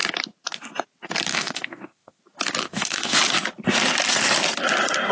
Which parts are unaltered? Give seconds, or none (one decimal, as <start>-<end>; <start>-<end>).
0.0-1.3; 2.2-2.6; 3.2-5.1